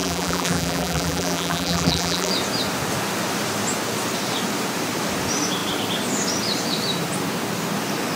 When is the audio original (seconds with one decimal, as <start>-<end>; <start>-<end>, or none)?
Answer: 2.3-8.2